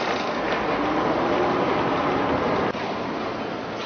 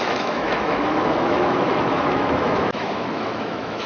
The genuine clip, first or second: first